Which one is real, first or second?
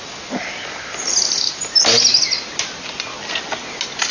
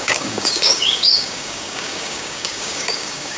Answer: first